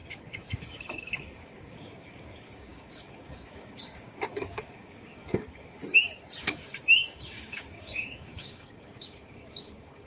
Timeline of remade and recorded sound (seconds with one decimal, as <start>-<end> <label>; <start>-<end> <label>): 0.0-5.8 remade; 5.8-6.4 recorded; 6.4-10.1 remade